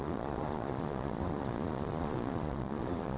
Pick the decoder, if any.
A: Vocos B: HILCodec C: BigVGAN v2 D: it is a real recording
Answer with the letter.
A